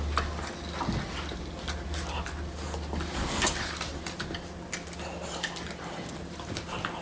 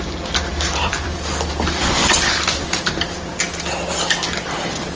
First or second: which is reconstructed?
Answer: second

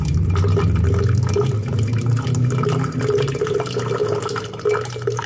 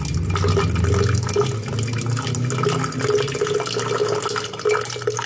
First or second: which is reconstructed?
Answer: first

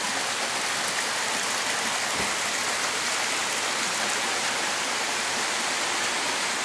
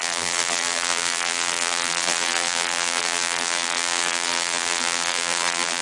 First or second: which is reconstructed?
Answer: second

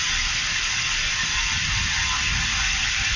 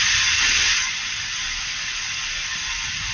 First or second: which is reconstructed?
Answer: first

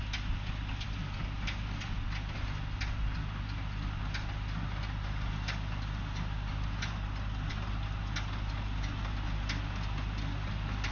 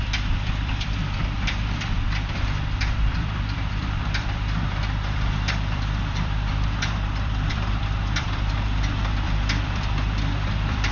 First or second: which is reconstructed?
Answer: second